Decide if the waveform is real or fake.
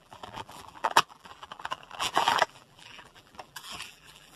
fake